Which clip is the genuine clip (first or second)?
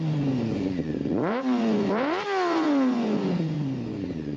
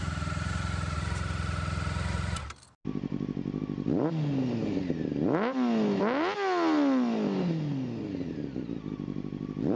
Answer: second